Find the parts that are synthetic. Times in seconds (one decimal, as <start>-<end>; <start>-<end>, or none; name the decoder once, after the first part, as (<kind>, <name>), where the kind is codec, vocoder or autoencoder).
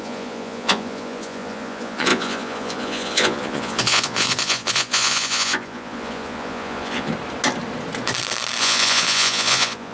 0.0-7.1 (vocoder, Vocos); 8.6-9.9